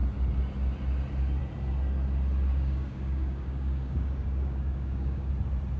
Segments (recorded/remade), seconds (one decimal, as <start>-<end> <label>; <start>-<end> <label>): 0.0-2.5 recorded; 2.5-5.3 remade; 5.3-5.8 recorded